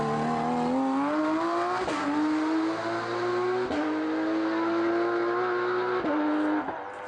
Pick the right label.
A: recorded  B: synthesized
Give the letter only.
A